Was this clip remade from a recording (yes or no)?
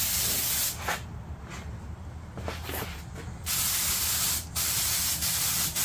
no